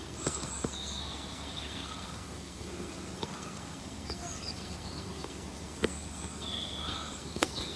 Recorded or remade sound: remade